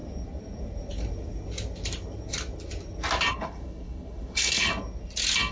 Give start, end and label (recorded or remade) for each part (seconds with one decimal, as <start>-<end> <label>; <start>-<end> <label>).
0.0-3.3 recorded; 3.3-4.7 remade; 4.7-5.5 recorded